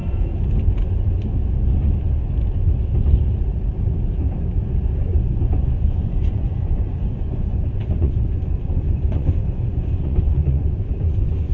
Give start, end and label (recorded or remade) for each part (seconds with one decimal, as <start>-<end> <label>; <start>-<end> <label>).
0.0-4.7 recorded; 4.7-11.5 remade